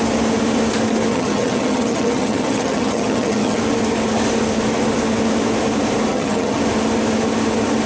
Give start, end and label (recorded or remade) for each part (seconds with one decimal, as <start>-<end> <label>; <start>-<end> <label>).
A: 0.0-1.1 recorded; 1.1-3.6 remade; 3.6-6.1 recorded; 6.1-6.6 remade; 6.6-7.9 recorded